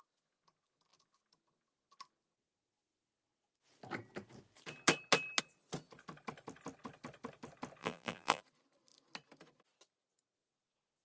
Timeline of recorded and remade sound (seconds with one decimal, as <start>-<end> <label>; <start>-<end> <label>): 0.0-7.8 recorded; 7.8-8.4 remade; 8.4-11.0 recorded